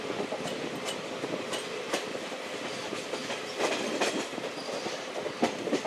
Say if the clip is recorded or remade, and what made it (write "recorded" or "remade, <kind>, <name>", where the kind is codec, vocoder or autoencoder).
recorded